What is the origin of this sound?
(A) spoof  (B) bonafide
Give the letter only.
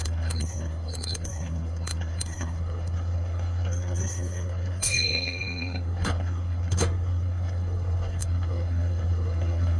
A